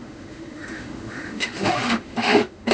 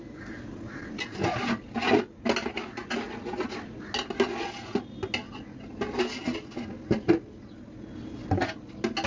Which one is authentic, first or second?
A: second